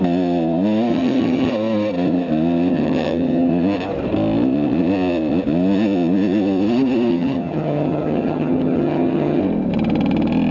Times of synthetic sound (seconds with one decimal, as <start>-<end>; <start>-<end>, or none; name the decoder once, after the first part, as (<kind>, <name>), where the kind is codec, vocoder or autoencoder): 0.9-1.5 (vocoder, HiFi-GAN); 2.7-3.5; 7.1-9.4